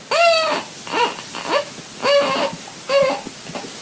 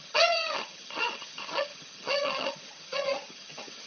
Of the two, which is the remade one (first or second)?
second